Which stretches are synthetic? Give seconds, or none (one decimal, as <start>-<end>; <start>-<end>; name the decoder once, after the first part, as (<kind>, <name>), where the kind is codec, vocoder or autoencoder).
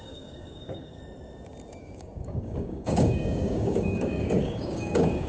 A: 0.0-1.0 (codec, DAC); 1.7-5.3